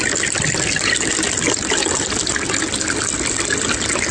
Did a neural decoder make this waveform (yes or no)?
no